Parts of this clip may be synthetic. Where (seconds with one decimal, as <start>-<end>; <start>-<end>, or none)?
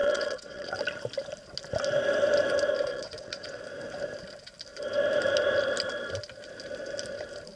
0.0-0.8; 2.9-3.6